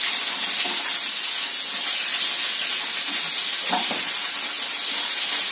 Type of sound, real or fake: real